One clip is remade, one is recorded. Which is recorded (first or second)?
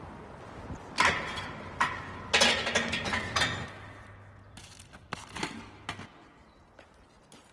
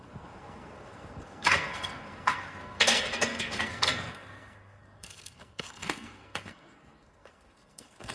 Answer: first